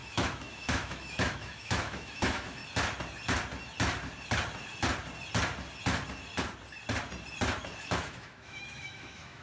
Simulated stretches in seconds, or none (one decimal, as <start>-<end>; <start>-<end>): 0.0-2.6; 7.8-9.4